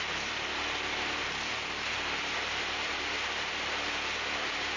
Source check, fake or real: real